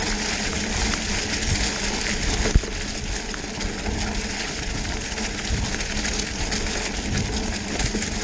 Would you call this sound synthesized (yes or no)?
no